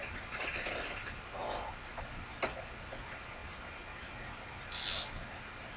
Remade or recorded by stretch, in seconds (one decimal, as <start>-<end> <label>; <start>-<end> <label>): 0.0-5.8 recorded